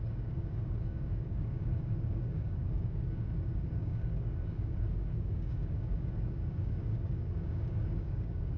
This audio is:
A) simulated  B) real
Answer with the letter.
A